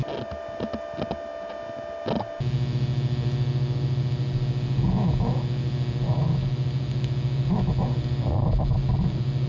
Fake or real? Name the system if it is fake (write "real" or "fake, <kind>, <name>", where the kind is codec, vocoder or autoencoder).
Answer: real